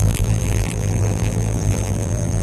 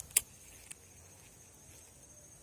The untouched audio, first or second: second